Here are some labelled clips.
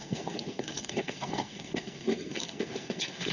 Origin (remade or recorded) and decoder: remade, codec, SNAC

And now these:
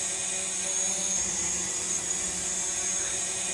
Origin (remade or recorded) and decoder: recorded